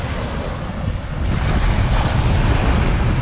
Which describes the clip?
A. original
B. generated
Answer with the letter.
A